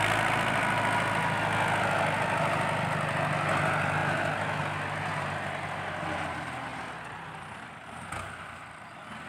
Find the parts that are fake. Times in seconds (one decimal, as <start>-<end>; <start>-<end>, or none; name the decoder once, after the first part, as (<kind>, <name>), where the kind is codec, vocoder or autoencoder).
none